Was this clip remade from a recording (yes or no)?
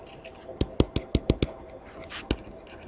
no